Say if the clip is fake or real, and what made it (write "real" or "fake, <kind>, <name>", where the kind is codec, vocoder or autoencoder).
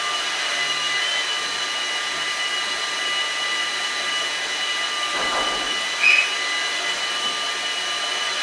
real